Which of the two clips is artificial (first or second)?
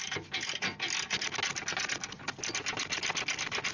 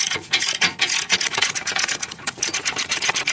second